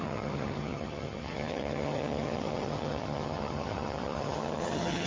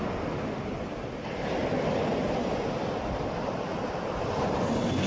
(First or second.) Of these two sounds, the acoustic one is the second